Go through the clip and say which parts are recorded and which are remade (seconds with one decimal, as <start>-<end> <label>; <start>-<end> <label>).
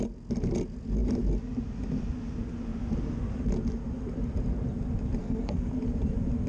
0.0-5.2 recorded; 5.2-5.7 remade; 5.7-6.5 recorded